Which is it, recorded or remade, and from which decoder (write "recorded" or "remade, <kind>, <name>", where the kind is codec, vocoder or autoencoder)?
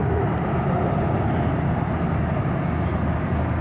recorded